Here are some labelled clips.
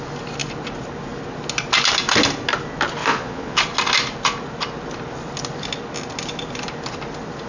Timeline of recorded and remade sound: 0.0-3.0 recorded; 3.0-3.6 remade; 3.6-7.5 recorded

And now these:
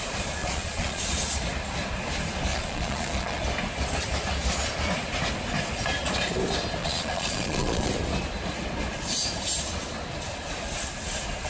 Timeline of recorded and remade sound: 0.0-0.4 recorded; 0.4-1.1 remade; 1.1-2.5 recorded; 2.5-3.4 remade; 3.4-6.8 recorded; 6.8-7.9 remade; 7.9-11.5 recorded